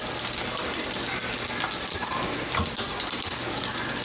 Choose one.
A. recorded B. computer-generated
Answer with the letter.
A